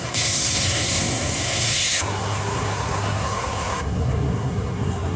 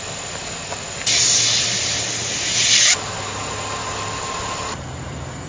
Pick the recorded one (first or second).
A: second